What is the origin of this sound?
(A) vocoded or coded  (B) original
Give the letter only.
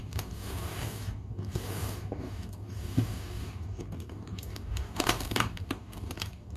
A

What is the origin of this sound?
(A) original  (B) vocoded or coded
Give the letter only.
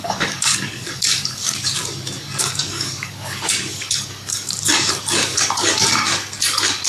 B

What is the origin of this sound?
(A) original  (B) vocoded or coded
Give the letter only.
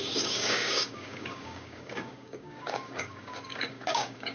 B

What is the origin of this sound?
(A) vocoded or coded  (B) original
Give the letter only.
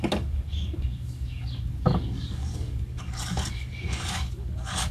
A